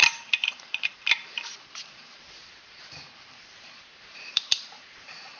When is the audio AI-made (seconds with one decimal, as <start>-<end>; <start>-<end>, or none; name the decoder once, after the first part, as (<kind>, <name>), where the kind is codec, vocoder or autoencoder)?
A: 0.0-5.4 (vocoder, BigVGAN v2)

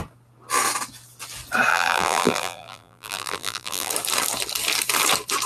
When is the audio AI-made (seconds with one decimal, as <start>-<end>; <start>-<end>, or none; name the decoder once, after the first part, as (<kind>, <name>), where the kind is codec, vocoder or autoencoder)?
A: 1.7-3.9 (vocoder, BigVGAN v2)

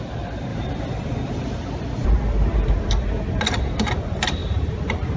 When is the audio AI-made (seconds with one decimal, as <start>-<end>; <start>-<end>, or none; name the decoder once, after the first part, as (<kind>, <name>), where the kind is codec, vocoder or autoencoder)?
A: 0.5-2.1 (vocoder, BigVGAN v2); 4.4-5.2

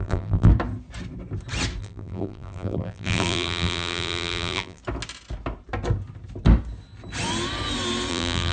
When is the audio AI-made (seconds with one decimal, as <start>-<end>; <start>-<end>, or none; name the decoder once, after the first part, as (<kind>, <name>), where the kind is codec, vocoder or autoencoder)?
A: 0.0-0.5 (vocoder, BigVGAN v2); 1.8-4.8; 8.1-8.5

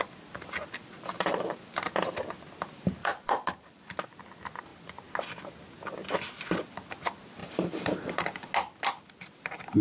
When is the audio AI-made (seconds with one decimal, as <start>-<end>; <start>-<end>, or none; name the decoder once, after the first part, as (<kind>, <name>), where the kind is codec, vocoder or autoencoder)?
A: 0.8-2.0 (vocoder, BigVGAN v2); 3.0-4.2; 7.4-8.2

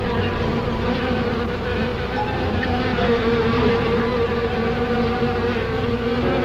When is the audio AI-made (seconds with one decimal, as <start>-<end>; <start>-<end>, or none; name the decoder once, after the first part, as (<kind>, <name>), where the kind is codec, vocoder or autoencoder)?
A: 2.9-3.7 (vocoder, BigVGAN v2)